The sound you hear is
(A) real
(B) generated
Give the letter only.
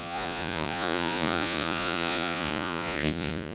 B